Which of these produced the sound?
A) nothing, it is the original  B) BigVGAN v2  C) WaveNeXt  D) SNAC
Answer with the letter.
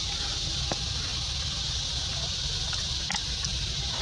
A